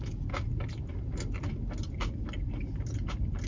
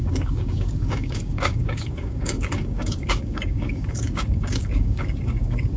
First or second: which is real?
first